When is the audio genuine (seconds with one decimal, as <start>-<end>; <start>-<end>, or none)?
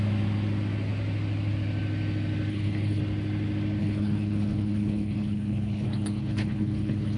0.0-2.5; 3.0-3.8